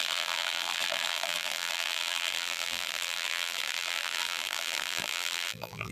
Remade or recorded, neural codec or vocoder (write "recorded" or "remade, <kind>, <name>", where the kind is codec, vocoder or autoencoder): remade, vocoder, BigVGAN v2